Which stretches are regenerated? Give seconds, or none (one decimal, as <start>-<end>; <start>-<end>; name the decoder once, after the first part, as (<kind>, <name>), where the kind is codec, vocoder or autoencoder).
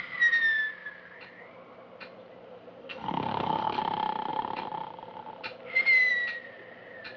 2.8-3.8 (codec, SNAC)